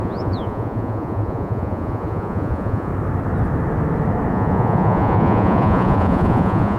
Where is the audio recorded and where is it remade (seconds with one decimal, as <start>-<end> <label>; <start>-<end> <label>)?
0.0-2.9 remade; 2.9-4.3 recorded; 4.3-6.8 remade